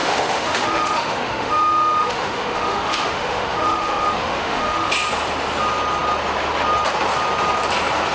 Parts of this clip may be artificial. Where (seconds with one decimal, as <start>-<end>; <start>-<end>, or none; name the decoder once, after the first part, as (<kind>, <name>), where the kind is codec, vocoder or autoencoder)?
0.0-4.9 (autoencoder, DAC-VAE)